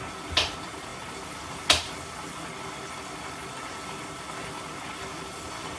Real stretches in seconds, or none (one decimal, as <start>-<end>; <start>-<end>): 0.0-5.8